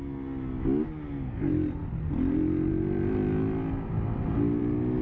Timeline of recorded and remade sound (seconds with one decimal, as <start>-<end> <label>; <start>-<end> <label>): 0.0-5.0 recorded